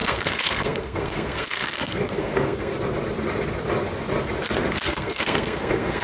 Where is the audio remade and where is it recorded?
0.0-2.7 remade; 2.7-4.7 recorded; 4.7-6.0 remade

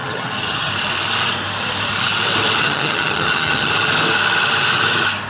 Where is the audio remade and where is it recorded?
0.0-0.7 remade; 0.7-2.6 recorded; 2.6-3.7 remade; 3.7-5.3 recorded

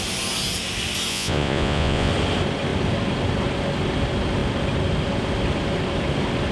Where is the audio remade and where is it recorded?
0.0-1.1 recorded; 1.1-2.1 remade; 2.1-6.5 recorded

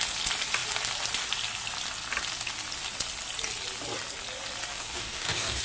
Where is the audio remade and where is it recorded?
0.0-4.7 recorded; 4.7-5.6 remade

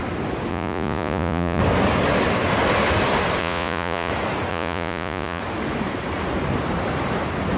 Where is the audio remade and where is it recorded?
0.0-0.5 recorded; 0.5-1.6 remade; 1.6-3.4 recorded; 3.4-4.1 remade; 4.1-4.5 recorded; 4.5-5.4 remade; 5.4-7.6 recorded